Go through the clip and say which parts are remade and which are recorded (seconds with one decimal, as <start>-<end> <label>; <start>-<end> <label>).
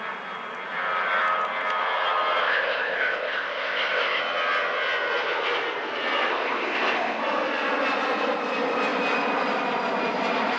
0.0-2.4 recorded; 2.4-4.2 remade; 4.2-6.3 recorded; 6.3-7.2 remade; 7.2-10.6 recorded